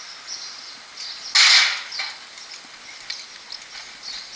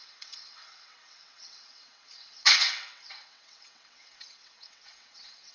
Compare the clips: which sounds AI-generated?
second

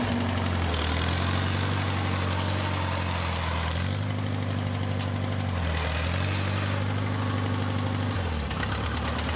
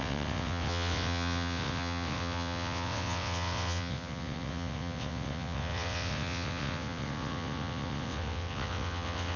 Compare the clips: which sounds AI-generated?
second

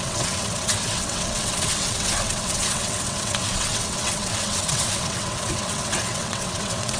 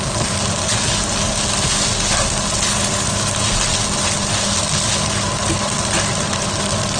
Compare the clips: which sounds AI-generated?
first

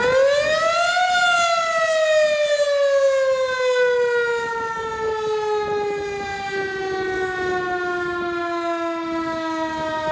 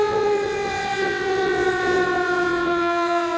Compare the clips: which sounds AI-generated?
second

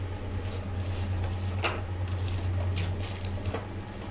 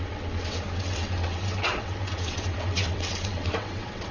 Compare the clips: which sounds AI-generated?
second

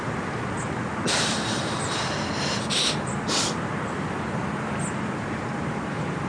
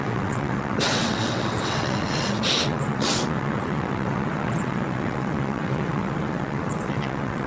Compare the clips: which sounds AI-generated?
second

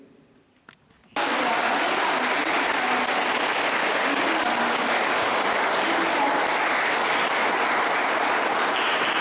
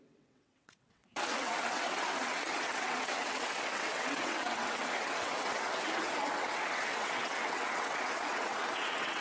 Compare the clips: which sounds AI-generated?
second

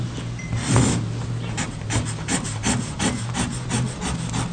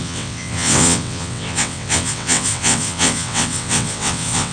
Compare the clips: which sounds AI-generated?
second